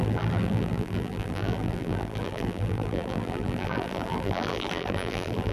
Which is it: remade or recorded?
remade